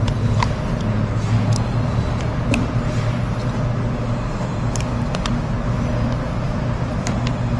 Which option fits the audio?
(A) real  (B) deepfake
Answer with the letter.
A